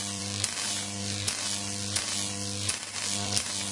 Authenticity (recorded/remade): remade